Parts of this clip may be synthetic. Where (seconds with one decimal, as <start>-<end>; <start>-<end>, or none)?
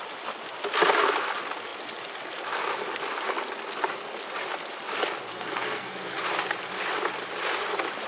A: 5.3-6.2